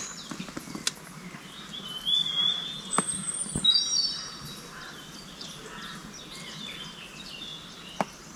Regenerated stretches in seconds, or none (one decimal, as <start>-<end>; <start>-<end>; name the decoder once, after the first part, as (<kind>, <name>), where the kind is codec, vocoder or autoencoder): none

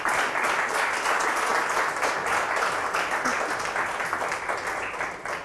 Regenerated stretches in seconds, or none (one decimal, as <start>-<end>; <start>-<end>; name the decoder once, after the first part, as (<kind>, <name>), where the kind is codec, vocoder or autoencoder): none

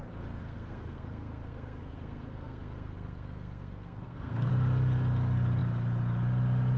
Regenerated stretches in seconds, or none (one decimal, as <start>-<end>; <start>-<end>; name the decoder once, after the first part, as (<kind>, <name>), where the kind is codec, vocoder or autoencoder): 0.4-4.5 (codec, SNAC)

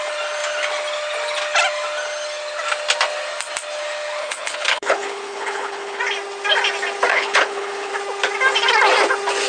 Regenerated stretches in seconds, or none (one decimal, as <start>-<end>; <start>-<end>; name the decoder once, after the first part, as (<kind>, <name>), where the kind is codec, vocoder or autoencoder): 4.2-6.0 (codec, HILCodec); 7.1-7.9

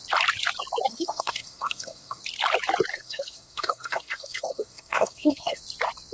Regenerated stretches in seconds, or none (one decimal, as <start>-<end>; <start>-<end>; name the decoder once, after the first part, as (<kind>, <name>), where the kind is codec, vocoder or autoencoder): 0.9-2.2 (codec, SNAC); 2.9-5.6

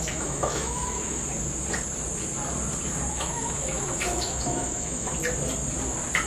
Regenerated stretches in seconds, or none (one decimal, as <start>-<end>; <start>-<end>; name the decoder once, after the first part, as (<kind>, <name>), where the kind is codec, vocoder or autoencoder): 0.0-1.2 (autoencoder, DAC-VAE); 3.1-5.1

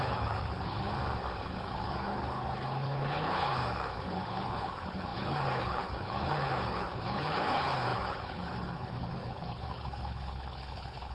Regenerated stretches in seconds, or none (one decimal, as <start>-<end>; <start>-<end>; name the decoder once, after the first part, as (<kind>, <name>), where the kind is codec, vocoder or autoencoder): 0.0-0.9 (codec, HILCodec); 1.6-11.1